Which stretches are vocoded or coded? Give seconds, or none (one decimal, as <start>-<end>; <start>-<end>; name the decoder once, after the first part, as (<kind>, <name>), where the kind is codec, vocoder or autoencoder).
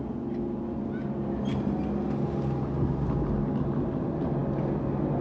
none